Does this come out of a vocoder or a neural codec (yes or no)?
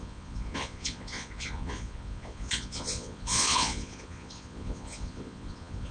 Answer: yes